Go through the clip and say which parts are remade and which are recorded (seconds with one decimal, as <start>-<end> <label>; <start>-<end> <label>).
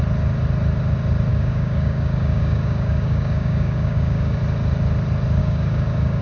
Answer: 0.0-1.3 recorded; 1.3-4.4 remade; 4.4-5.4 recorded; 5.4-6.2 remade